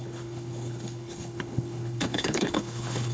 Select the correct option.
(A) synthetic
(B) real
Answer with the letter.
A